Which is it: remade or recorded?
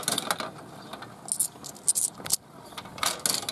recorded